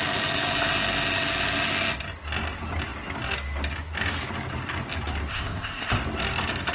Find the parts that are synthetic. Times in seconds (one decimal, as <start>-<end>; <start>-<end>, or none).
5.3-6.0